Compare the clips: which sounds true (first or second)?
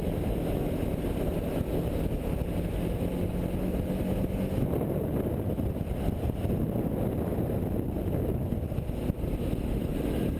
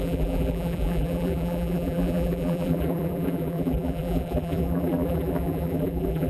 first